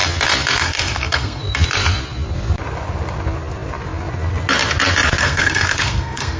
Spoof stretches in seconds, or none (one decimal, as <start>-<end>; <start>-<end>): 0.6-1.4; 5.2-6.4